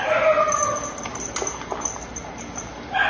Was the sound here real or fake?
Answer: real